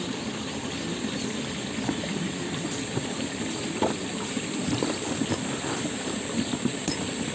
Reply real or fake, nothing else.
real